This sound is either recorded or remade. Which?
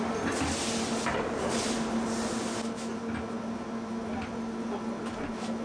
recorded